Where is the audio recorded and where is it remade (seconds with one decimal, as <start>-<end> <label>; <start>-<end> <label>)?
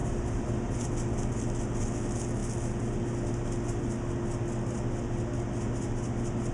0.0-0.9 remade; 0.9-6.5 recorded